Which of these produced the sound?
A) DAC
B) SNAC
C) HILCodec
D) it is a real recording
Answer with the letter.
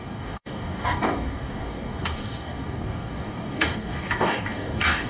A